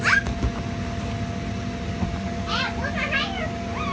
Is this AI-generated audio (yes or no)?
no